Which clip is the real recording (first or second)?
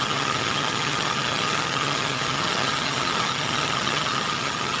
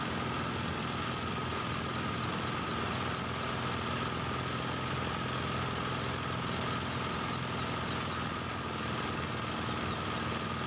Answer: second